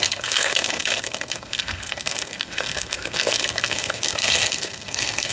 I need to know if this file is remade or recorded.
remade